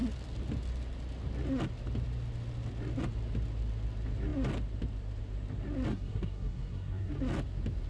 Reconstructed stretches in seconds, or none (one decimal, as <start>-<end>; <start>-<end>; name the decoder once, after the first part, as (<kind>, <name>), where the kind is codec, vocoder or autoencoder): 5.9-7.1 (codec, SNAC)